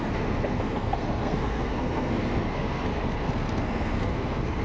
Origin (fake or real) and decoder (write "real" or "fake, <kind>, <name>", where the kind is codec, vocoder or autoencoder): fake, codec, SNAC